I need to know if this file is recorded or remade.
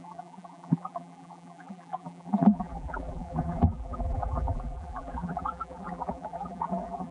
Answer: remade